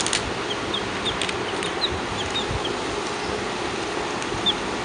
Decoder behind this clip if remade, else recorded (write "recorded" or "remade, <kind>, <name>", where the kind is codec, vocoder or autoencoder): recorded